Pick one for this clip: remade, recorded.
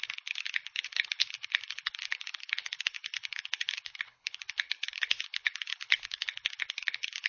remade